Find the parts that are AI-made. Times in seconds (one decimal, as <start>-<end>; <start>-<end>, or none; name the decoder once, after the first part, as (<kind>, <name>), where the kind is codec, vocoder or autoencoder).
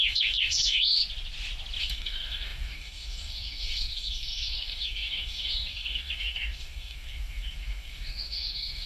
0.0-1.0 (codec, DAC); 1.8-8.9